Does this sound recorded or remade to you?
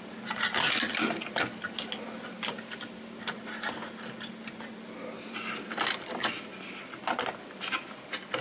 recorded